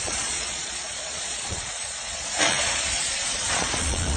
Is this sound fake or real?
fake